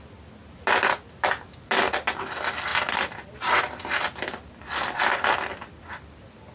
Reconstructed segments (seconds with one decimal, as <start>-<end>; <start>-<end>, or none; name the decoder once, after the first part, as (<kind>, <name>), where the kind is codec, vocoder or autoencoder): none